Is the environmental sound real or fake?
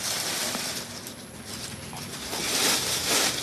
fake